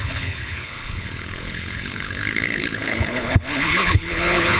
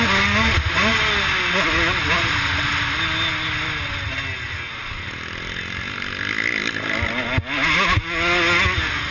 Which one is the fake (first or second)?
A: first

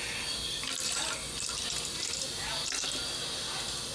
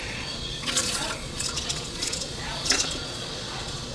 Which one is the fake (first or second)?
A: second